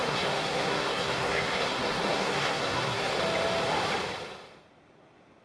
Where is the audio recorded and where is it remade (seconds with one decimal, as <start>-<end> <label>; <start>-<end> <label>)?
0.0-3.2 remade; 3.2-5.4 recorded